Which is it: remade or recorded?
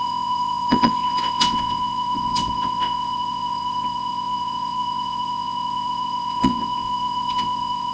remade